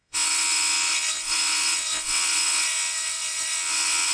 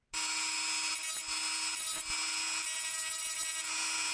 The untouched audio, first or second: second